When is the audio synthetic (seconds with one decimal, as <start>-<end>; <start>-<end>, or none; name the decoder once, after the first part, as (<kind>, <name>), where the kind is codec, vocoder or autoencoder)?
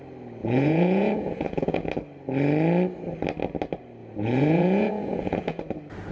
0.4-1.9 (vocoder, Vocos); 4.0-5.6